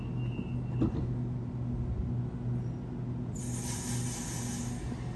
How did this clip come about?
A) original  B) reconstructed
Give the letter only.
A